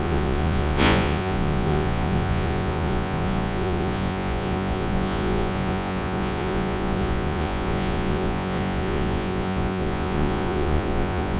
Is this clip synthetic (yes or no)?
yes